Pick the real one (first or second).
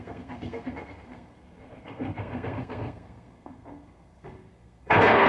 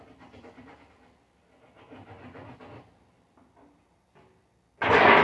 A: second